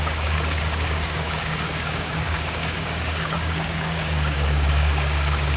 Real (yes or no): no